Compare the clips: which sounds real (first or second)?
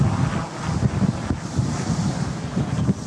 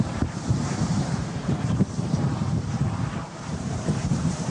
first